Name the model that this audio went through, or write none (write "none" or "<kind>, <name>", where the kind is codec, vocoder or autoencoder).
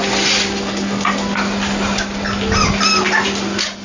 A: none